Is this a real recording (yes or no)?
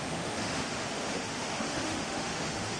no